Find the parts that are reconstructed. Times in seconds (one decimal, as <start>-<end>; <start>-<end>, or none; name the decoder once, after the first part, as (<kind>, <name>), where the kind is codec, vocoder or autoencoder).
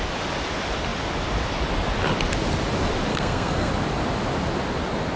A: 3.1-3.7 (codec, SNAC)